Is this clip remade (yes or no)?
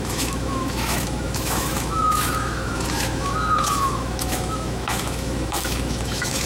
yes